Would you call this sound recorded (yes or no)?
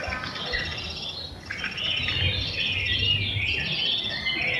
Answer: yes